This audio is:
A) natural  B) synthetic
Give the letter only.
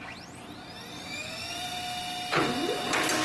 A